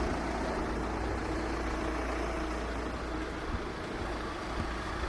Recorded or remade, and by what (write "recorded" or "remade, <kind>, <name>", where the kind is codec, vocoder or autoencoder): recorded